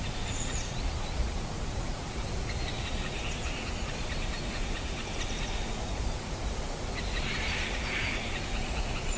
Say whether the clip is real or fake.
fake